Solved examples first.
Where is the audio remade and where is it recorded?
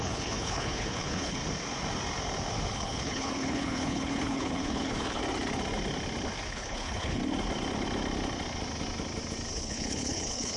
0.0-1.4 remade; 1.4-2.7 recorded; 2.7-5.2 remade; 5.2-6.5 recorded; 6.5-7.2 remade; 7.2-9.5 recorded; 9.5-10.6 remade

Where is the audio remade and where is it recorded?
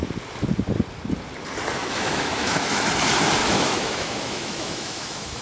0.0-1.8 recorded; 1.8-2.9 remade; 2.9-3.4 recorded; 3.4-5.4 remade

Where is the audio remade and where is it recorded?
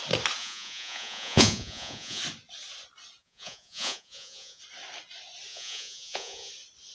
0.0-0.4 recorded; 0.4-2.2 remade; 2.2-3.2 recorded; 3.2-4.6 remade; 4.6-5.5 recorded; 5.5-6.5 remade; 6.5-6.9 recorded